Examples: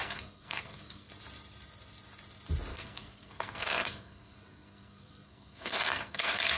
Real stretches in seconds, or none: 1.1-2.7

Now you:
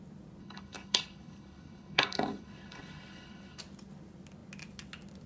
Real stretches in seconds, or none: 0.0-0.4; 3.6-5.3

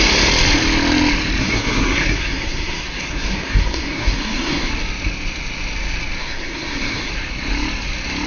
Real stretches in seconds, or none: 0.0-1.4; 4.7-6.2; 7.1-8.3

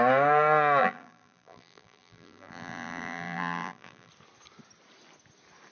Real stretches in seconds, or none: 0.0-0.8; 4.1-5.7